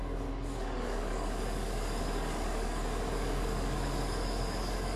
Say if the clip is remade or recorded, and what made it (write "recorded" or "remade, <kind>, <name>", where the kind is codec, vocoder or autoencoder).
remade, codec, DAC